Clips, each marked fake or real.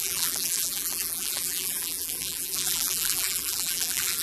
fake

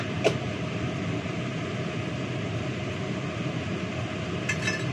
real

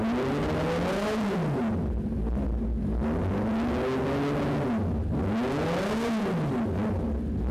real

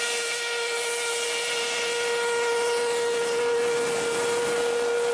real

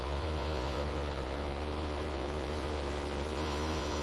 fake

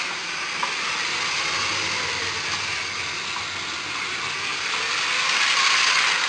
real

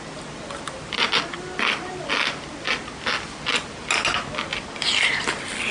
real